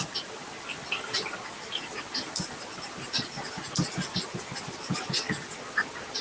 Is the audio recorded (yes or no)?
yes